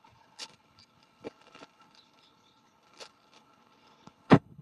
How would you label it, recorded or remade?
remade